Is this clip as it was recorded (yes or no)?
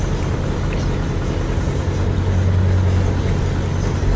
yes